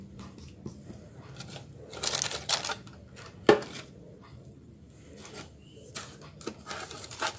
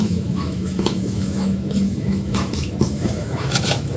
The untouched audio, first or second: first